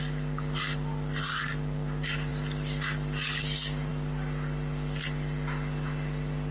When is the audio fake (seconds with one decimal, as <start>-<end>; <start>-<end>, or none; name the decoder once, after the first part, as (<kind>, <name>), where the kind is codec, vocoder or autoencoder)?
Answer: none